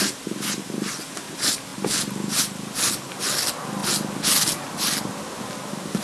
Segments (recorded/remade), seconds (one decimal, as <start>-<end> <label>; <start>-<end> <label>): 0.0-6.0 recorded